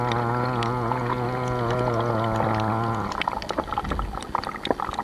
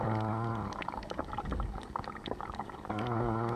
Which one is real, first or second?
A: first